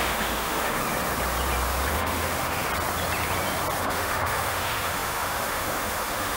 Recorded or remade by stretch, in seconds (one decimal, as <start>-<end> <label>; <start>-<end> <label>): 0.0-0.8 remade; 0.8-1.9 recorded; 1.9-2.7 remade; 2.7-3.8 recorded; 3.8-6.4 remade